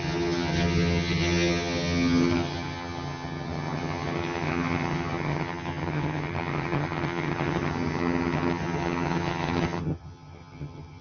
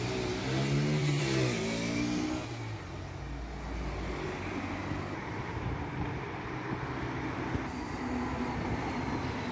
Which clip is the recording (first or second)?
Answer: second